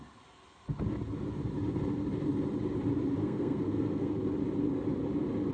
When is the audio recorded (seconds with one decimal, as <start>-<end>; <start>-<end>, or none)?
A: 0.0-3.2; 4.1-5.5